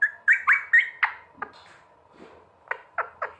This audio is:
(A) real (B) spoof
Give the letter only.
A